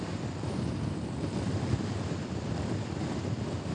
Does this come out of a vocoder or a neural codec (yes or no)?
no